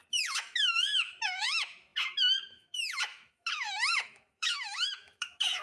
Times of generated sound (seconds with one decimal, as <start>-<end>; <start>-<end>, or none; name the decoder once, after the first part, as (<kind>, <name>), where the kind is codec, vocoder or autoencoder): 0.0-5.6 (autoencoder, DAC-VAE)